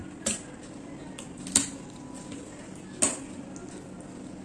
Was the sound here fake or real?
real